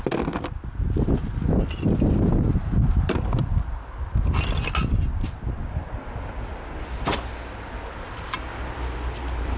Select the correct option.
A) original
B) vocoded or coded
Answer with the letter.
A